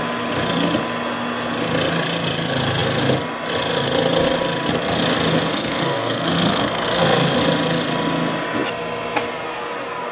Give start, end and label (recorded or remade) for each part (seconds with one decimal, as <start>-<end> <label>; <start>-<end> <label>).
0.0-5.5 recorded; 5.5-7.4 remade; 7.4-10.1 recorded